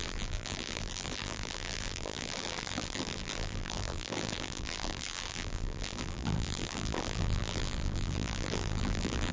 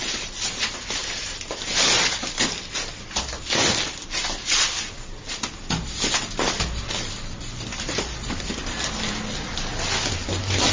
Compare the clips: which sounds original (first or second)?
second